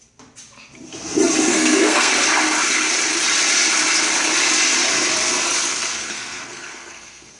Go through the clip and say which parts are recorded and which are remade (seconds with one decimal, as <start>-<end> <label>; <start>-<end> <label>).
0.0-1.5 recorded; 1.5-2.1 remade; 2.1-5.7 recorded; 5.7-7.4 remade